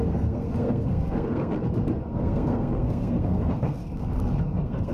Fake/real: fake